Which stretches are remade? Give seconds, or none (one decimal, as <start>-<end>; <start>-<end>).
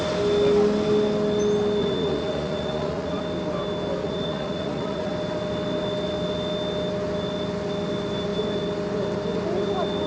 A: 1.8-3.2; 4.0-5.1